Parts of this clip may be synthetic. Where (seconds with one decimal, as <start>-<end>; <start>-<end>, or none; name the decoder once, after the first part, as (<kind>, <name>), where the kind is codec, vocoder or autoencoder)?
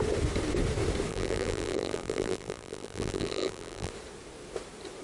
1.1-3.9 (vocoder, BigVGAN v2)